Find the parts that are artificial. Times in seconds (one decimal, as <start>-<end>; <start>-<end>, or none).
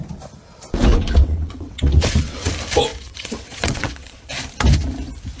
0.9-2.5; 2.9-4.3